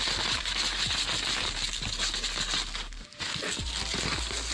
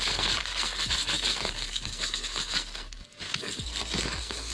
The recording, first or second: first